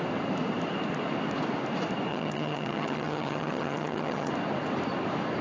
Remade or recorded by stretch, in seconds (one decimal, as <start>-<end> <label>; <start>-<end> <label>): 0.0-2.1 recorded; 2.1-4.3 remade; 4.3-5.4 recorded